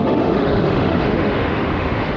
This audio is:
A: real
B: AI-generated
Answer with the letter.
B